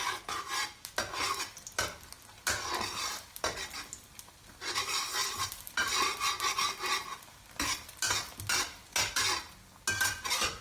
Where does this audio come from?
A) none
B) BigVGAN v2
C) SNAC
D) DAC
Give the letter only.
A